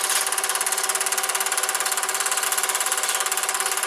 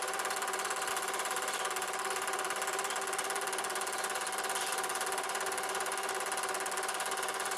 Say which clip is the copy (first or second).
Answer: second